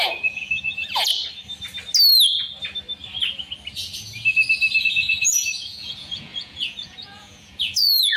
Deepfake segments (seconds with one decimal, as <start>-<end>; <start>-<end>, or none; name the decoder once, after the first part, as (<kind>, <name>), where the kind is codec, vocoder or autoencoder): 0.0-1.1 (vocoder, Vocos); 4.8-8.2

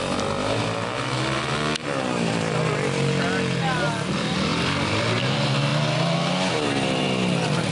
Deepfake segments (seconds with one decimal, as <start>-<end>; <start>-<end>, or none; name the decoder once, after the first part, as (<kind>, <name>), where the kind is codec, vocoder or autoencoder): 4.5-5.2 (vocoder, BigVGAN v2)

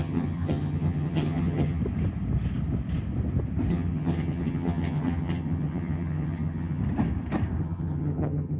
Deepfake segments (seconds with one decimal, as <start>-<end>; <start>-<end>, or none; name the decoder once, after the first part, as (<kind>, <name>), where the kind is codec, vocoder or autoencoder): 0.0-1.8 (vocoder, HiFi-GAN); 3.7-6.8; 7.6-8.6

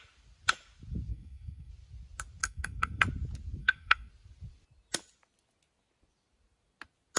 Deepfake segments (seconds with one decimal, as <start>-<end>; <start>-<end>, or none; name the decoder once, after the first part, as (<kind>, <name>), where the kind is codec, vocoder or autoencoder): 1.1-1.7 (codec, SNAC); 2.4-3.0; 3.6-4.1

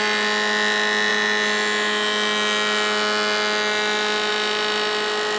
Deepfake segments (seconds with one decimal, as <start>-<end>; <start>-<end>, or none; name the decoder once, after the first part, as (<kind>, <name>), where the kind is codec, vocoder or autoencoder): none

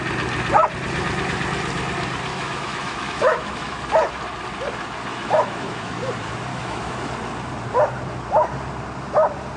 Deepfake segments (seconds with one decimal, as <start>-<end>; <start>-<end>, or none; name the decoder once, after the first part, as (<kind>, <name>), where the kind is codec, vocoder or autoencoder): 2.3-3.8 (autoencoder, DAC-VAE); 5.1-5.9; 6.5-7.1

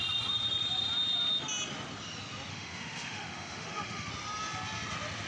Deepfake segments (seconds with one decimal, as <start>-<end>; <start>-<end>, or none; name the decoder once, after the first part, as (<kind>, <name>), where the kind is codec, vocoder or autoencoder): 2.5-4.1 (autoencoder, DAC-VAE)

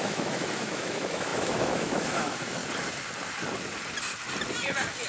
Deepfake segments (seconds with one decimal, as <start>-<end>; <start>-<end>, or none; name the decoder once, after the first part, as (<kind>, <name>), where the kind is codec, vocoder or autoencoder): 0.0-2.6 (autoencoder, DAC-VAE)